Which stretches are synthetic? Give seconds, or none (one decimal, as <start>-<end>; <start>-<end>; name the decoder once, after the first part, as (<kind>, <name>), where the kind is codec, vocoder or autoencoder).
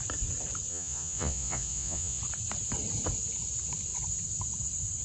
0.7-2.2 (vocoder, Vocos)